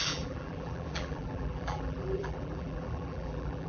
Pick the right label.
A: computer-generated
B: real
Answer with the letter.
A